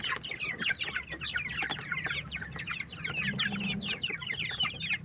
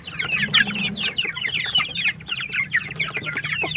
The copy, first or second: second